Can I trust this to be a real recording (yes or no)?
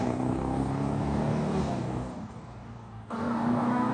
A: no